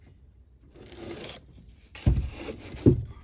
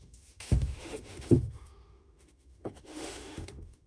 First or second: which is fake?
second